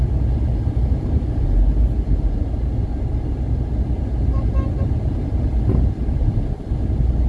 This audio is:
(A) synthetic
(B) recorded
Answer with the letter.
B